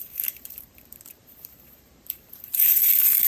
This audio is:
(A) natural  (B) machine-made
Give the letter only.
B